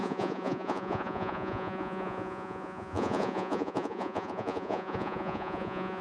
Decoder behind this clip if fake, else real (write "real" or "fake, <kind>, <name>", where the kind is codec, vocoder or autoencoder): fake, vocoder, Vocos